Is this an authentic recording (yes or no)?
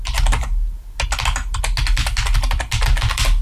yes